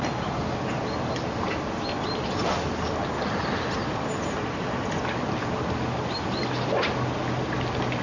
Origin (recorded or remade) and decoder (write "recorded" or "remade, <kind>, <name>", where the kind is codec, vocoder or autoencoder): recorded